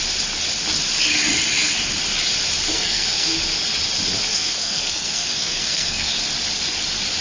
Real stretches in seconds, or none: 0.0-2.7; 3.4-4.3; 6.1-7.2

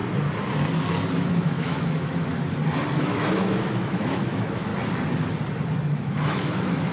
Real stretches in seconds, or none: 0.0-1.3; 2.3-3.0; 4.7-6.0

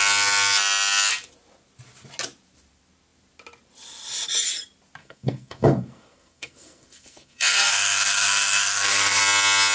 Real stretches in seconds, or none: 0.0-5.0; 9.2-9.7

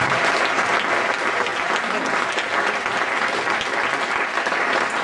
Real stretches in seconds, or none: 1.5-2.9

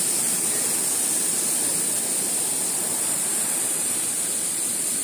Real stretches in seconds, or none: 1.7-2.8

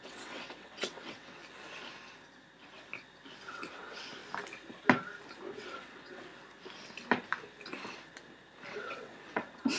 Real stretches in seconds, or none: 1.4-3.5; 4.2-5.5; 6.3-8.7

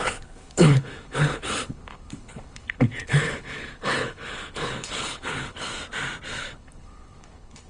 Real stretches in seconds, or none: 5.7-6.4

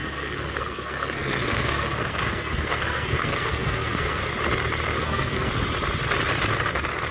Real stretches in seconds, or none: 4.3-5.0; 5.5-7.1